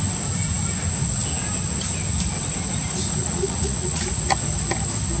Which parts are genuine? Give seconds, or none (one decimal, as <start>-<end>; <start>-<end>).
0.0-3.2; 4.0-5.2